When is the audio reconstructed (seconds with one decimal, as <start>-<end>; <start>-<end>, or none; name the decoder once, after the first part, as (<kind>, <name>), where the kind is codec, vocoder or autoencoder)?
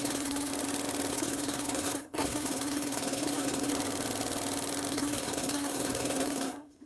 0.0-0.5 (codec, SNAC); 1.1-3.7; 4.9-6.9